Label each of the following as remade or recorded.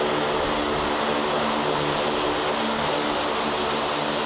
recorded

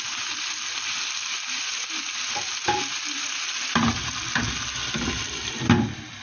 recorded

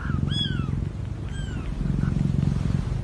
recorded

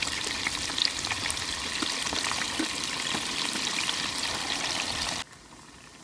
recorded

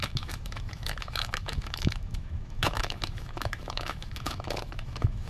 remade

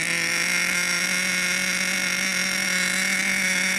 recorded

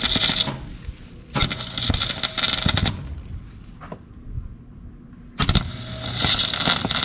recorded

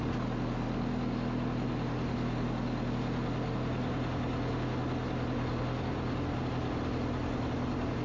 recorded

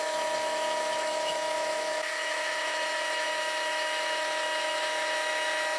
remade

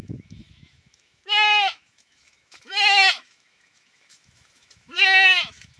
remade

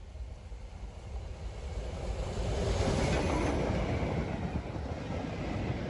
recorded